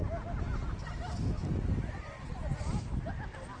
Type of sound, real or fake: real